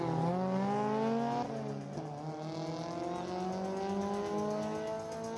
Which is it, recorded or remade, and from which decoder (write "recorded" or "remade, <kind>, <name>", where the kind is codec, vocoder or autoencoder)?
recorded